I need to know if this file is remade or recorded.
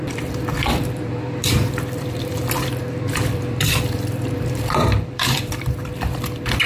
remade